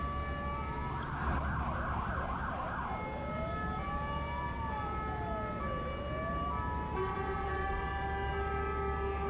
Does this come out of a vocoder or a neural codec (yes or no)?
no